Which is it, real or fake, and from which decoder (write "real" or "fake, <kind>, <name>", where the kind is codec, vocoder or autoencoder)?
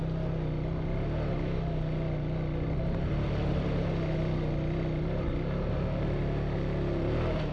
real